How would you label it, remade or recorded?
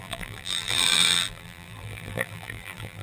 remade